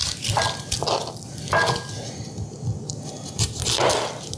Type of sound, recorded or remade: recorded